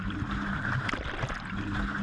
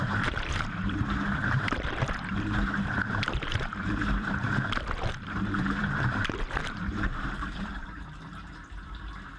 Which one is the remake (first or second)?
second